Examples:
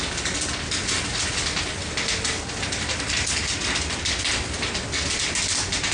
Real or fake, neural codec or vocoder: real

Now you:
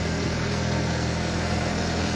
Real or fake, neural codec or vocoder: fake, codec, SNAC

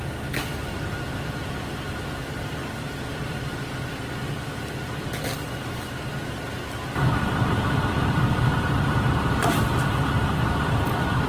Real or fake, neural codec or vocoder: fake, vocoder, BigVGAN v2